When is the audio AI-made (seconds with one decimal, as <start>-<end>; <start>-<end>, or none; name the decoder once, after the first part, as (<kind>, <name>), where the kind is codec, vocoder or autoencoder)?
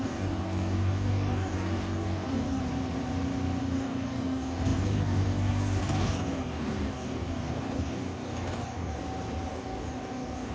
0.0-2.6 (codec, DAC); 3.6-9.0; 9.5-10.5